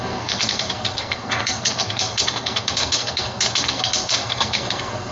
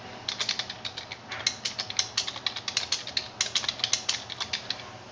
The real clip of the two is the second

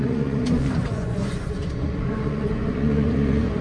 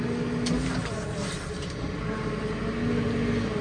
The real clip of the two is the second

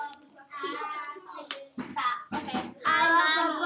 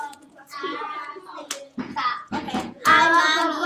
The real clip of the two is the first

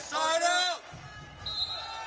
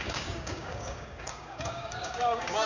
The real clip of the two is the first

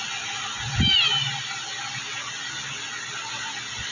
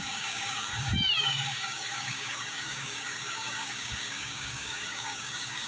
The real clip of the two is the first